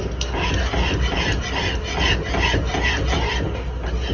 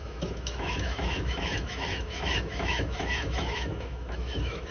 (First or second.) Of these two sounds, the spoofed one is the second